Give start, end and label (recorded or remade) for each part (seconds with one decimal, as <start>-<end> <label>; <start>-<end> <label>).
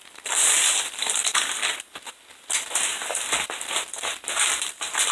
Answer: 0.0-1.2 remade; 1.2-3.9 recorded; 3.9-5.1 remade